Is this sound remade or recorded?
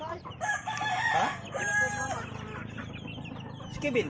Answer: recorded